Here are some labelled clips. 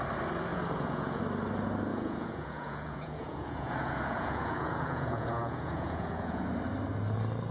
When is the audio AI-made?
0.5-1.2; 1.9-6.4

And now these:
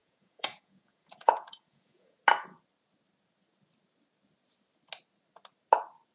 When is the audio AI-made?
0.0-2.2

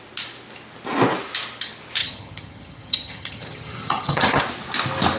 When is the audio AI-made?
2.0-4.4